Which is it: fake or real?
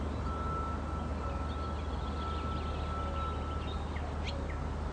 real